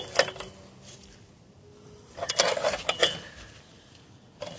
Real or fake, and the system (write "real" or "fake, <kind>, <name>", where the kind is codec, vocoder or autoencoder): real